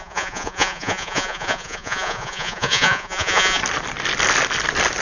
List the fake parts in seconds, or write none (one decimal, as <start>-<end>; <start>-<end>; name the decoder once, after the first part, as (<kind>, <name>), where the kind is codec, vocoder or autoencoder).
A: 0.0-3.6 (vocoder, Vocos)